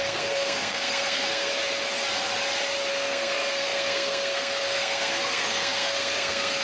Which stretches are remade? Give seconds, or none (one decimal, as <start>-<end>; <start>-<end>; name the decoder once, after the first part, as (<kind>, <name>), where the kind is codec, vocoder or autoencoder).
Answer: 0.0-1.5 (codec, SNAC); 2.9-6.6